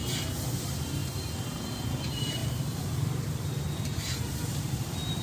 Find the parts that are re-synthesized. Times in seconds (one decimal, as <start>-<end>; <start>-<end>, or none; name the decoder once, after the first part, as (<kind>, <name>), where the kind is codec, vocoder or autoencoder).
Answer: 0.5-5.2 (vocoder, BigVGAN v2)